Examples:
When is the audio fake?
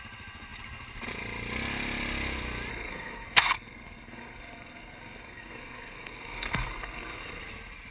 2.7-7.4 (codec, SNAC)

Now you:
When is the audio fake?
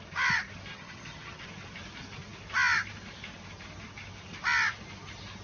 0.7-1.4 (vocoder, HiFi-GAN)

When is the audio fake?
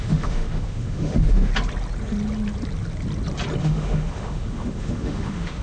0.0-1.5 (autoencoder, DAC-VAE); 3.6-5.6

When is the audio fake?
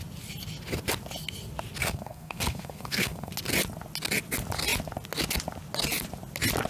1.8-3.3 (codec, SNAC)